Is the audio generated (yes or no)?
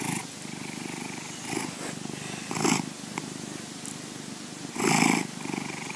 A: no